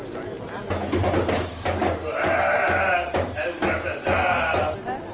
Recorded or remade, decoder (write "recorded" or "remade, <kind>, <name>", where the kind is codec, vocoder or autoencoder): recorded